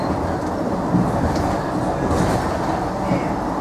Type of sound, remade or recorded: recorded